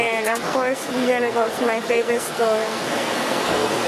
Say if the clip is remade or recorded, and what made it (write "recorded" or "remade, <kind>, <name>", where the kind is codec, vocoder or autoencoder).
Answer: remade, codec, SNAC